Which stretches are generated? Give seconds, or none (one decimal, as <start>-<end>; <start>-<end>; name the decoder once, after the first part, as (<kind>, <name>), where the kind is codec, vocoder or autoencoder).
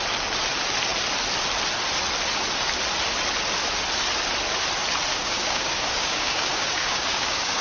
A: 5.1-7.6 (codec, DAC)